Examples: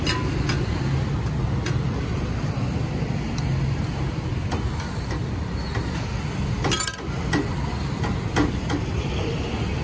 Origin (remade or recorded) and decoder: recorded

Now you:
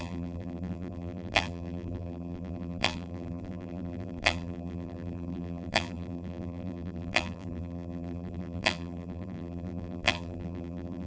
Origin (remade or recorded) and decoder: remade, vocoder, BigVGAN v2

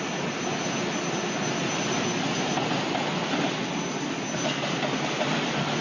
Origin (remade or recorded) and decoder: recorded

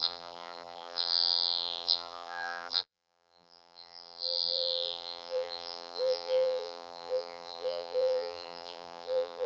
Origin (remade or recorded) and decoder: remade, vocoder, BigVGAN v2